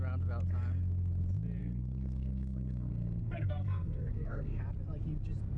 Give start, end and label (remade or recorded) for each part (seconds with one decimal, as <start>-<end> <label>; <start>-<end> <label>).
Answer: 0.0-1.6 recorded; 1.6-4.6 remade; 4.6-5.6 recorded

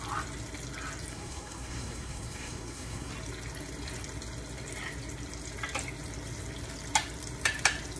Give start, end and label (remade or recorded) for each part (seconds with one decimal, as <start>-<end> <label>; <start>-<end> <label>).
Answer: 0.0-1.1 recorded; 1.1-3.1 remade; 3.1-8.0 recorded

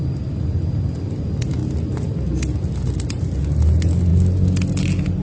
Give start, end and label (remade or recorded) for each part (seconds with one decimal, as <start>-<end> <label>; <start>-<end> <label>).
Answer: 0.0-5.2 recorded

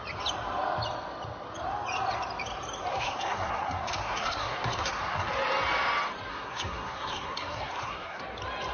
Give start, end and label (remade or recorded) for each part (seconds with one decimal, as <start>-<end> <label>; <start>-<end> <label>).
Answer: 0.0-2.9 recorded; 2.9-5.3 remade; 5.3-6.3 recorded; 6.3-8.2 remade; 8.2-8.7 recorded

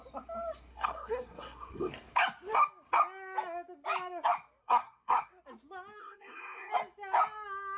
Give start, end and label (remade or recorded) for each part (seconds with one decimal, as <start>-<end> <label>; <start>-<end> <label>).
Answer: 0.0-0.7 recorded; 0.7-1.9 remade; 1.9-4.6 recorded; 4.6-5.3 remade; 5.3-6.0 recorded; 6.0-6.7 remade; 6.7-7.8 recorded

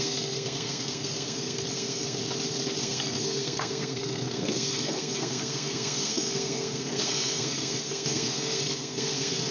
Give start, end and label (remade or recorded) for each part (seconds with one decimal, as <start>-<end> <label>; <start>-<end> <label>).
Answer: 0.0-2.2 remade; 2.2-2.8 recorded; 2.8-9.5 remade